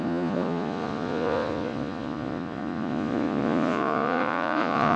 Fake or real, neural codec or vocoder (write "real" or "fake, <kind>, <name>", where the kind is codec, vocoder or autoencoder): fake, vocoder, Vocos